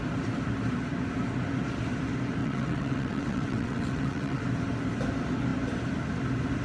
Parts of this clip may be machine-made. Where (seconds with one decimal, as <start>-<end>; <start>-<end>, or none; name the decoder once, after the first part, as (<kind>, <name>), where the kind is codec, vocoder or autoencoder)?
2.4-4.4 (vocoder, WaveNeXt)